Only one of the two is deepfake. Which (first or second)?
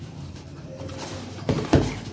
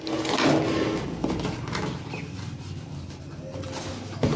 first